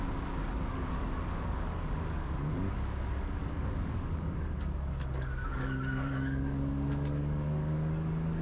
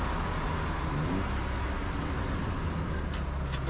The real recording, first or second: second